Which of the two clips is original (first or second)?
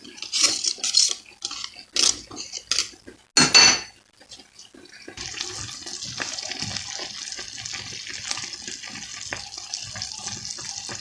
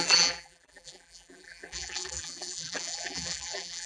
first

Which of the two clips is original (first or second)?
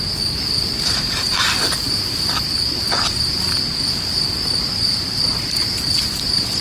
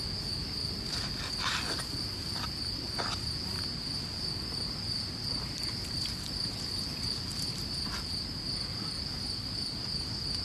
second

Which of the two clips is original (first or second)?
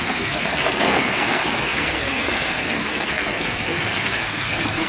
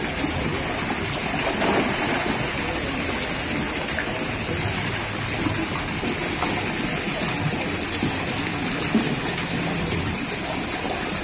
second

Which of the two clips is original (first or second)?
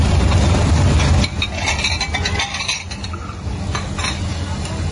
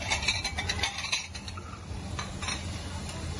first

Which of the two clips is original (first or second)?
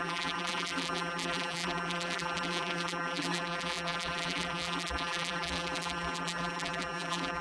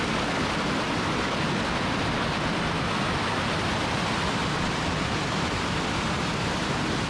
second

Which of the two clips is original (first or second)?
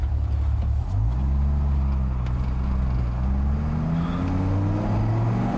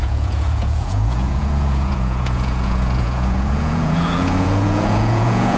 first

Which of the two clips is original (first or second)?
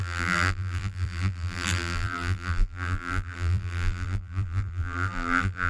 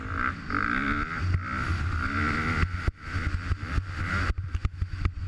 second